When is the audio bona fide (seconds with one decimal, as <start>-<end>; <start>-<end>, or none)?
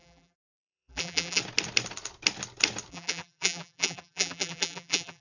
1.4-2.9